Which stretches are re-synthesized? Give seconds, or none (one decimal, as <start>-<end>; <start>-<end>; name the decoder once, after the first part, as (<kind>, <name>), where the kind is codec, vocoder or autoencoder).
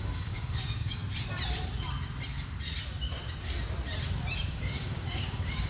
0.0-1.0 (codec, DAC); 4.4-5.7